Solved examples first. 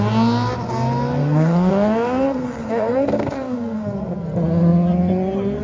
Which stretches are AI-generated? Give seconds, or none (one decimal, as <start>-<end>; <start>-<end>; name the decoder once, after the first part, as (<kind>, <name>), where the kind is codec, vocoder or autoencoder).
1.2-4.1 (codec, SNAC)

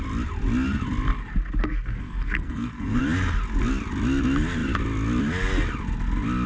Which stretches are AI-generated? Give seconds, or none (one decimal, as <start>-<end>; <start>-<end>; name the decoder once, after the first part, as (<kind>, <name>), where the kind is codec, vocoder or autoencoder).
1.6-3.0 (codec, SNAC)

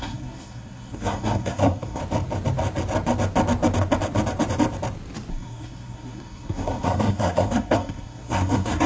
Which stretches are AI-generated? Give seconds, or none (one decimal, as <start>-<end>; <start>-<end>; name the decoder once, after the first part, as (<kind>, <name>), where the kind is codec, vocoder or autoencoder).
0.0-2.0 (codec, SNAC); 5.3-8.9

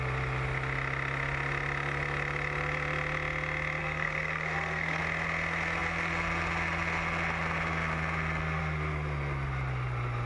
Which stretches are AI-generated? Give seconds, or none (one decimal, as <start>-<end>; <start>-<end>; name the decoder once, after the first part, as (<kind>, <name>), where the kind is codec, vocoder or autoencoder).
3.8-5.0 (codec, SNAC)